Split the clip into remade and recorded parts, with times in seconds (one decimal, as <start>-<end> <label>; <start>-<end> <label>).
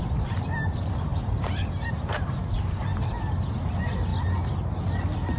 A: 0.0-1.1 recorded; 1.1-3.3 remade; 3.3-5.4 recorded